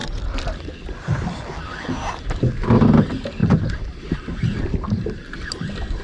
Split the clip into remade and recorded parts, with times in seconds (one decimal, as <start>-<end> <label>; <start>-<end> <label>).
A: 0.0-3.4 recorded; 3.4-5.5 remade; 5.5-6.0 recorded